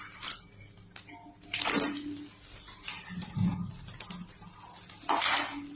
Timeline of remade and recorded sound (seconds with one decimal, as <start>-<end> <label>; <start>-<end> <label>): 0.0-5.8 recorded